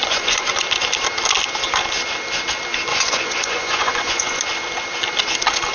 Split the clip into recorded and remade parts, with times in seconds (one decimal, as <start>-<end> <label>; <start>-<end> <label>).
0.0-0.5 remade; 0.5-2.9 recorded; 2.9-4.4 remade; 4.4-5.7 recorded